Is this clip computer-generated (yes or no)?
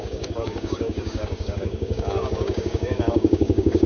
yes